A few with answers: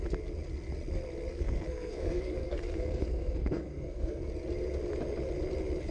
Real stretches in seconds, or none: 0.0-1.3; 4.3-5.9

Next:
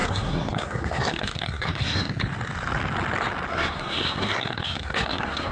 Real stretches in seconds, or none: 2.1-3.5